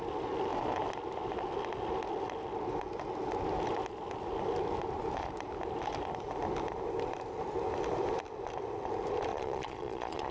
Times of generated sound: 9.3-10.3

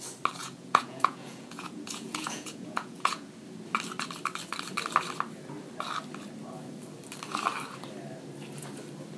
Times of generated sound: 0.4-3.3

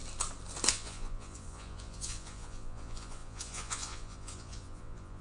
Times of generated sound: 0.7-5.2